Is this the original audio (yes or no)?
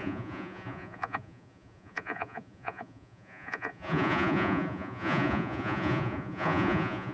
no